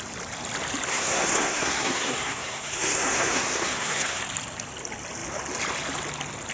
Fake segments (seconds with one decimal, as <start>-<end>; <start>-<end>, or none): 0.9-4.2